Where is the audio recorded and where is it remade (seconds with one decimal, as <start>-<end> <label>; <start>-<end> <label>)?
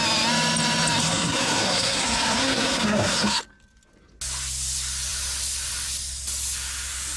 0.0-1.0 recorded; 1.0-3.4 remade; 3.4-7.2 recorded